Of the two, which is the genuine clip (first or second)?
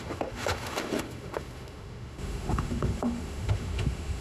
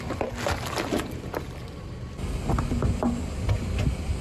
second